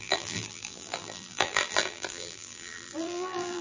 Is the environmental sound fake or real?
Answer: fake